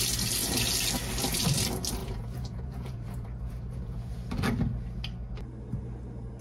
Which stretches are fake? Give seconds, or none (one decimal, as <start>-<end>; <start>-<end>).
2.0-4.1